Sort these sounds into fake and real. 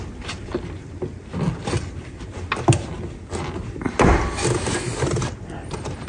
real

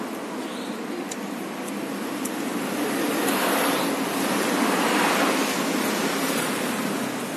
real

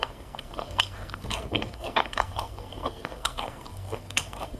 fake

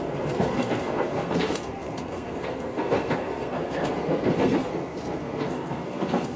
fake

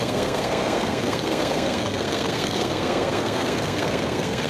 fake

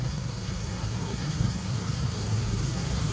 fake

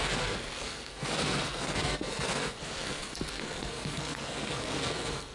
fake